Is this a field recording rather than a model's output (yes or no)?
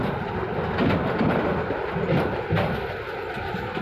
yes